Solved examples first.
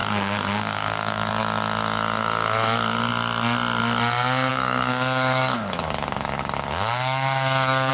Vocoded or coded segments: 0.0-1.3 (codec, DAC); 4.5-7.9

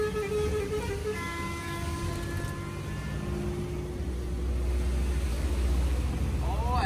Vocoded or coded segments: 1.0-2.1 (codec, DAC); 5.3-6.1

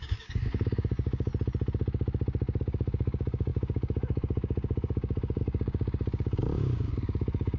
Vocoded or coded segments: 0.0-1.3 (codec, DAC); 2.6-7.6

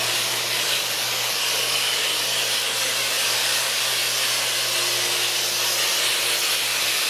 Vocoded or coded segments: 0.0-2.1 (codec, DAC); 2.8-4.0; 6.6-7.1

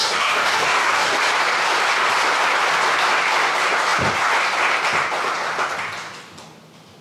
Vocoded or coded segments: 0.0-1.2 (codec, DAC)

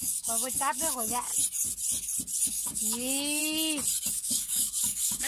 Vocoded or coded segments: 0.0-1.3 (codec, DAC); 2.5-3.4; 4.1-5.3